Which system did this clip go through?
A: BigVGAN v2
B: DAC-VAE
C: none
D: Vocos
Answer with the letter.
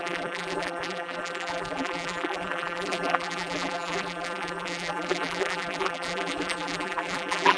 A